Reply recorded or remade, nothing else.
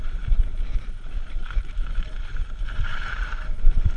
remade